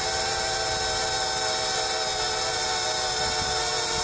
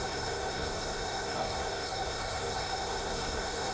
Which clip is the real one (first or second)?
first